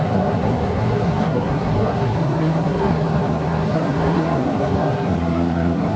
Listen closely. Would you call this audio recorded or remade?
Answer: remade